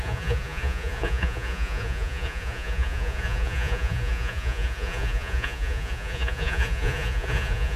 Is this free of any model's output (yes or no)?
no